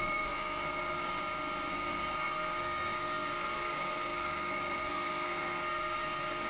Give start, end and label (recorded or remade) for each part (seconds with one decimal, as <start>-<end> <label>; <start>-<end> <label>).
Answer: 0.0-1.2 remade; 1.2-1.7 recorded; 1.7-6.5 remade